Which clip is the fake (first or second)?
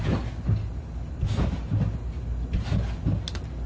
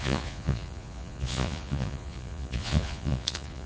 second